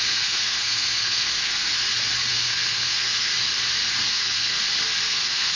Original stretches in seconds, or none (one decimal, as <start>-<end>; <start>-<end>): 1.7-2.3; 3.3-4.1; 4.6-5.1